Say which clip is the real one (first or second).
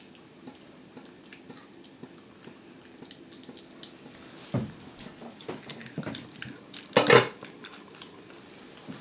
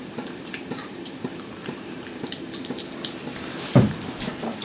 first